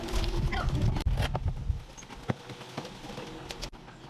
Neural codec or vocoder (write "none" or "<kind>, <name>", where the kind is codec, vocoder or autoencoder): none